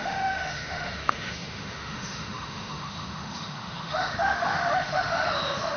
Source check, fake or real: fake